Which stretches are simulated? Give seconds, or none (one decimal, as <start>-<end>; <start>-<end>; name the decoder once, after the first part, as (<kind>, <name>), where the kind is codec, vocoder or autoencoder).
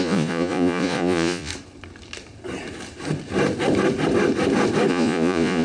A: 0.0-1.5 (vocoder, Vocos); 4.9-5.6